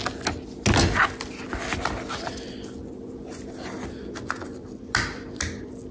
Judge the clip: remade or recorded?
recorded